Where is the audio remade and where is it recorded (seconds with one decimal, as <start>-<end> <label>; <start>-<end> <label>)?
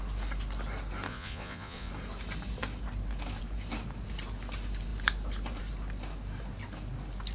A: 0.0-1.1 recorded; 1.1-1.9 remade; 1.9-7.3 recorded